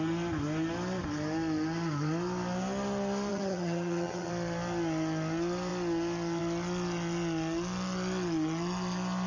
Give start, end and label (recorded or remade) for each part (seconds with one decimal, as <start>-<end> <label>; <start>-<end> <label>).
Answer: 0.0-3.3 recorded; 3.3-4.3 remade; 4.3-9.3 recorded